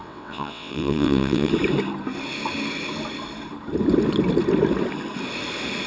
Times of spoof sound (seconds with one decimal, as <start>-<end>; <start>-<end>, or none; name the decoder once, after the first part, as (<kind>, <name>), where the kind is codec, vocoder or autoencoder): 0.0-1.5 (vocoder, WaveNeXt)